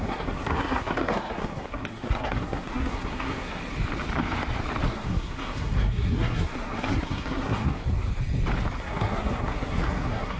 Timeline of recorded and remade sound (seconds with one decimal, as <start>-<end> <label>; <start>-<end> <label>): 0.0-3.6 remade; 3.6-4.9 recorded; 4.9-7.8 remade; 7.8-8.8 recorded; 8.8-10.4 remade